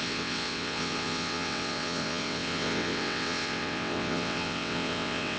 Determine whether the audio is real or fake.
fake